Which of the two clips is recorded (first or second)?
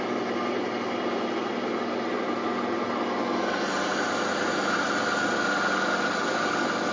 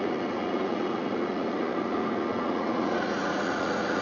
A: first